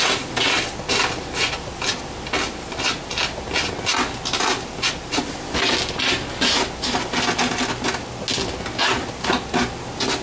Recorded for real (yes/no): yes